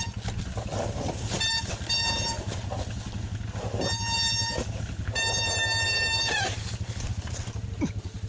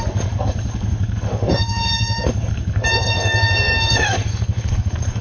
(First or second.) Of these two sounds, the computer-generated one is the second